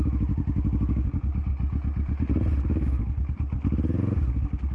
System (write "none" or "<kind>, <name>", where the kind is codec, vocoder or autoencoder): none